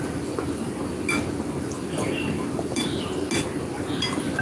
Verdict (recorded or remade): recorded